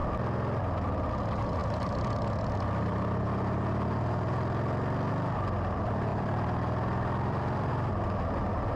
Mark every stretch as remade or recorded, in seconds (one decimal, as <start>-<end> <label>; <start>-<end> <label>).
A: 0.0-6.1 recorded; 6.1-7.7 remade; 7.7-8.8 recorded